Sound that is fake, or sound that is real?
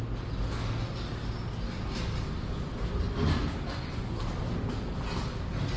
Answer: real